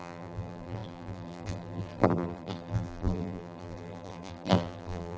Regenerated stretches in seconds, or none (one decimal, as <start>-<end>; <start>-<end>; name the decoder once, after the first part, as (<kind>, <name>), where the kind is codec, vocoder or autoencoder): 0.0-5.2 (vocoder, BigVGAN v2)